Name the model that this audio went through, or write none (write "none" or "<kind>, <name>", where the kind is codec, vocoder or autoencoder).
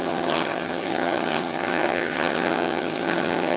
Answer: vocoder, HiFi-GAN